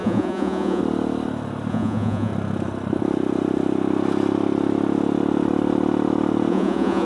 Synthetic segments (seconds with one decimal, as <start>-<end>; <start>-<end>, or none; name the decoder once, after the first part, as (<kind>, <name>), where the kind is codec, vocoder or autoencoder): 0.0-0.8 (vocoder, Vocos); 1.7-2.3; 6.5-7.0